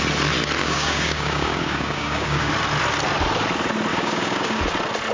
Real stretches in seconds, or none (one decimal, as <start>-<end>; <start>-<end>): 0.0-0.6; 2.5-3.9; 4.6-5.1